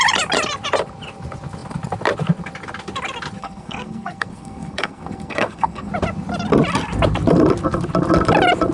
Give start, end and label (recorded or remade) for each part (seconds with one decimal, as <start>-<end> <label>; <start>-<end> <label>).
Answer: 0.0-3.4 recorded; 3.4-5.9 remade; 5.9-8.7 recorded

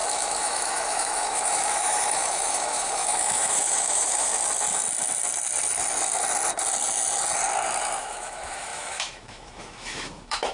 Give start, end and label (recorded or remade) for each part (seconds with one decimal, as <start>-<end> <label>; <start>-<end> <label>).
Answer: 0.0-4.3 remade; 4.3-8.0 recorded; 8.0-10.5 remade

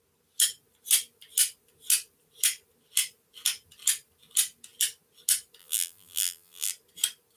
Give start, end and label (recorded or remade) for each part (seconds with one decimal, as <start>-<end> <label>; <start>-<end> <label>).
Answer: 0.0-5.6 recorded; 5.6-6.7 remade; 6.7-7.4 recorded